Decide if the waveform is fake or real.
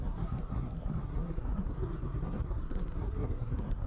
fake